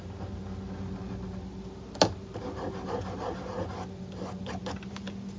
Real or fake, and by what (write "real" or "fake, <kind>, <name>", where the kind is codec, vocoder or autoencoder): real